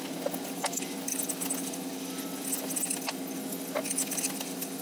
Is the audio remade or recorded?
recorded